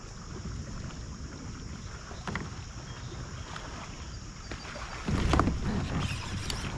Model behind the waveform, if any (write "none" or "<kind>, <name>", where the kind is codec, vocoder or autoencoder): none